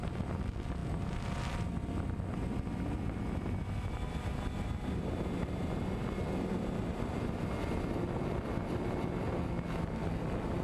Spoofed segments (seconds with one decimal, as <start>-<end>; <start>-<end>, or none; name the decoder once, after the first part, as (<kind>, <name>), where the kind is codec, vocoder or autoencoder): none